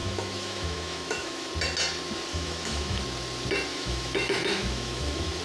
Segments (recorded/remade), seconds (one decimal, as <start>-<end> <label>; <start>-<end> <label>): 0.0-1.5 remade; 1.5-2.3 recorded; 2.3-3.0 remade; 3.0-3.7 recorded; 3.7-5.4 remade